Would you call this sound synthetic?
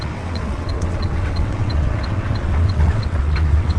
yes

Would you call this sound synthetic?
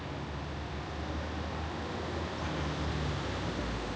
no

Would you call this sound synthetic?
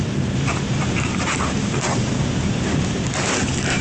yes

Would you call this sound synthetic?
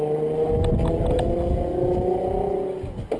no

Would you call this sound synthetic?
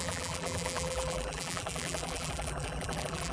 yes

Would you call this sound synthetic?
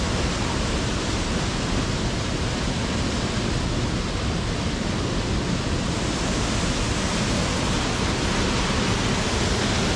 no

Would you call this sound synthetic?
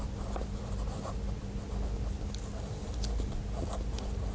no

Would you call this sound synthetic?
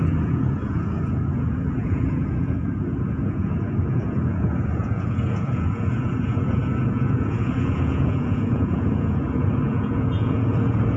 yes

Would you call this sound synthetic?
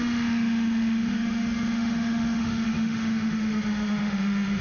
yes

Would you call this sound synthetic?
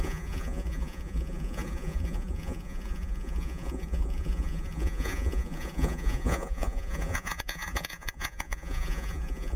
yes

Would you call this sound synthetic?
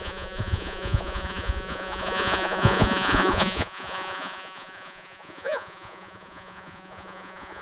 yes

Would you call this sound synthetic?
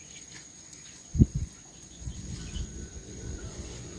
yes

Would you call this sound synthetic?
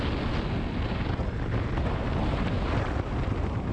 no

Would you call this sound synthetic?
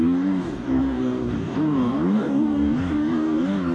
yes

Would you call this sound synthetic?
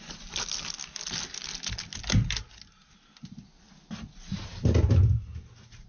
no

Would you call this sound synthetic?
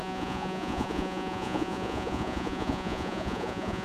yes